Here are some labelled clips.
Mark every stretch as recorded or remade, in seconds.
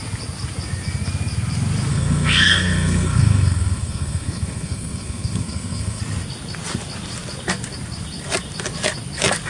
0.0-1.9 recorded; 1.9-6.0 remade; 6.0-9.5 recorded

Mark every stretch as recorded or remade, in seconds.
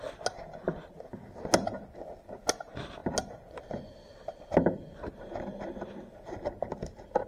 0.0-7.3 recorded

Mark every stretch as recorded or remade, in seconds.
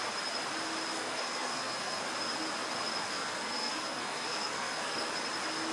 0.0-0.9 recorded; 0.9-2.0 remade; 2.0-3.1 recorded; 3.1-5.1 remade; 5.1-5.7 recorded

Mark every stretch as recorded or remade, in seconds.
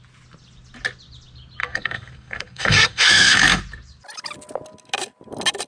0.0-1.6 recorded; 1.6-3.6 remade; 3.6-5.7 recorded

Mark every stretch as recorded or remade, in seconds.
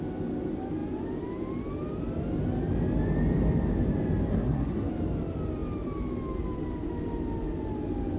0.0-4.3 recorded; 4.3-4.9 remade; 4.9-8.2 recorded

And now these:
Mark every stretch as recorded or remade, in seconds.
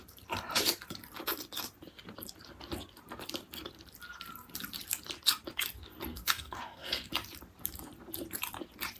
0.0-6.1 recorded; 6.1-7.1 remade; 7.1-9.0 recorded